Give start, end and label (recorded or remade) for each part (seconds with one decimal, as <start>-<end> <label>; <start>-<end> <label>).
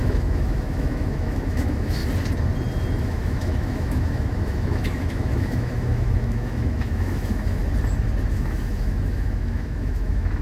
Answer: 0.0-2.0 remade; 2.0-3.0 recorded; 3.0-7.6 remade; 7.6-8.3 recorded; 8.3-10.4 remade